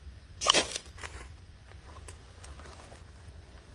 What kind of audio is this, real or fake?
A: fake